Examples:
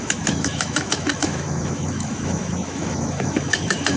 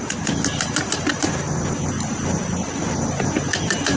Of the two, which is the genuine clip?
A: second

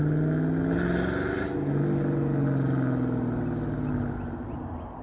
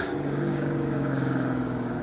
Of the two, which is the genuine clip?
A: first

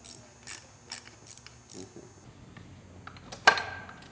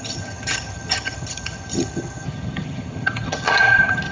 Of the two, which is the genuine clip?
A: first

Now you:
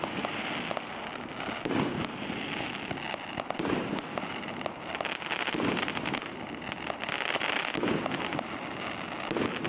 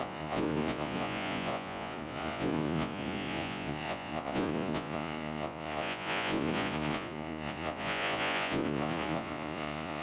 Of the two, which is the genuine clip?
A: first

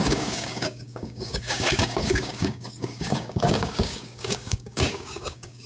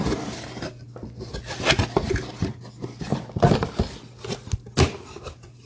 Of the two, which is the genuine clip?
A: second